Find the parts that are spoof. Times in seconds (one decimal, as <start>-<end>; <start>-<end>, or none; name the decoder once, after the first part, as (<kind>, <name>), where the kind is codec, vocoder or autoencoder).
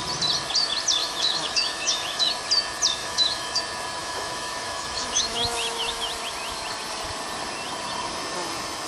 1.0-2.3 (autoencoder, DAC-VAE); 3.0-3.6; 4.0-6.1